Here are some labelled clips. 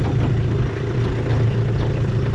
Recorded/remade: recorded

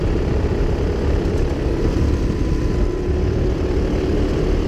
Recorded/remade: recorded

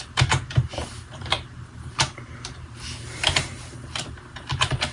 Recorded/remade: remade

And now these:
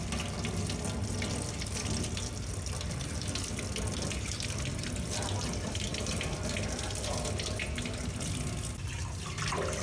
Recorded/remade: recorded